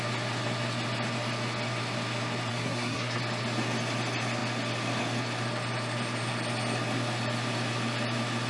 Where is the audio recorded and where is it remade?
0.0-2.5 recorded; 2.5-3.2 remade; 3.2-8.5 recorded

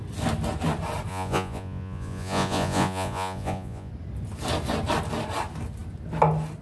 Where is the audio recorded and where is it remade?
0.0-1.1 recorded; 1.1-3.9 remade; 3.9-6.6 recorded

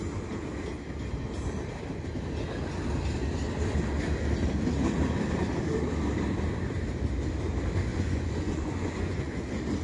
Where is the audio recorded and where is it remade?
0.0-7.9 recorded; 7.9-9.4 remade; 9.4-9.8 recorded